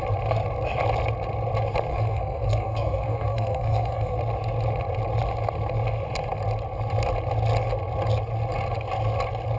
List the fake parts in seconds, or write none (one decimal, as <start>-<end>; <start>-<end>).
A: 1.9-4.2